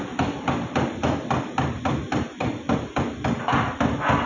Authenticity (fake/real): real